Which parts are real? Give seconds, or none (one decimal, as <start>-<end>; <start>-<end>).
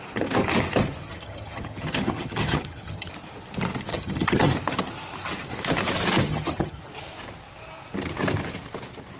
0.0-1.0; 3.1-3.9; 4.5-6.3; 6.8-9.2